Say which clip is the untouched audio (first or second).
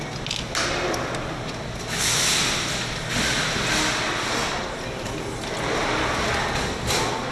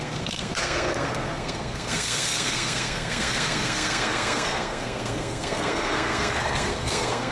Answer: first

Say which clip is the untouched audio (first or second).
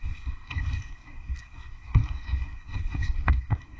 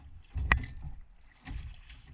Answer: second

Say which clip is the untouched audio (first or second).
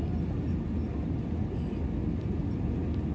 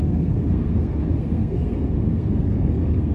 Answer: first